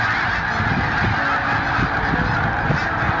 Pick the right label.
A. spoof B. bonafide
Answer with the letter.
B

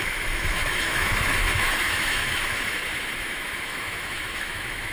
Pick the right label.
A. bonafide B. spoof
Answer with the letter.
B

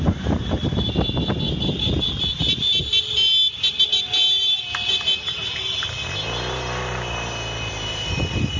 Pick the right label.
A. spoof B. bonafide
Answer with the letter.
B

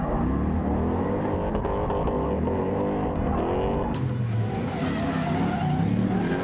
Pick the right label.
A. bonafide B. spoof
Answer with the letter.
A